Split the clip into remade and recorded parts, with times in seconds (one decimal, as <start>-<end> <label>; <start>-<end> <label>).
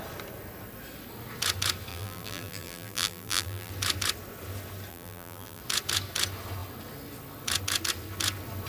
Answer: 0.0-1.9 recorded; 1.9-3.7 remade; 3.7-4.9 recorded; 4.9-5.6 remade; 5.6-8.7 recorded